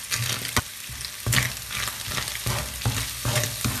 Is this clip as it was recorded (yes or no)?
yes